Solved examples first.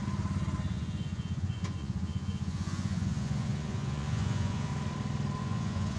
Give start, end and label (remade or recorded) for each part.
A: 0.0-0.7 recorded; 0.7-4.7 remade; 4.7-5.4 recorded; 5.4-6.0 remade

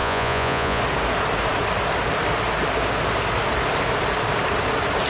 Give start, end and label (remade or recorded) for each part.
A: 0.0-0.8 remade; 0.8-5.1 recorded

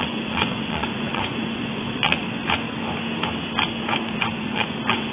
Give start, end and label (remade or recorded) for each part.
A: 0.0-2.2 remade; 2.2-4.1 recorded; 4.1-5.1 remade

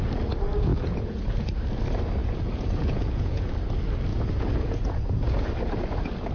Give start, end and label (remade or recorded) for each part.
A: 0.0-0.7 recorded; 0.7-1.4 remade; 1.4-2.2 recorded; 2.2-3.5 remade; 3.5-4.1 recorded; 4.1-5.5 remade; 5.5-6.3 recorded

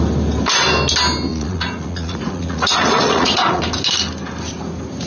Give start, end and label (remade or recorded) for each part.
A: 0.0-1.3 recorded; 1.3-3.6 remade; 3.6-5.1 recorded

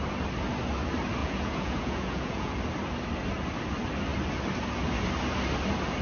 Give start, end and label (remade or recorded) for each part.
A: 0.0-1.2 recorded; 1.2-2.6 remade; 2.6-6.0 recorded